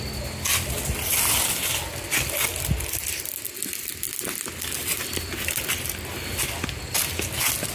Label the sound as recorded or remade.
recorded